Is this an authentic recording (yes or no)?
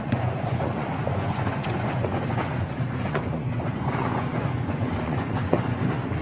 no